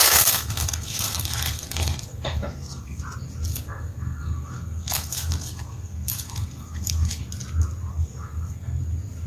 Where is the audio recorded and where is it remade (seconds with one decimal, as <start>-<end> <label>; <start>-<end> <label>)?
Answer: 0.0-3.0 remade; 3.0-3.5 recorded; 3.5-7.2 remade; 7.2-7.9 recorded; 7.9-8.8 remade; 8.8-9.3 recorded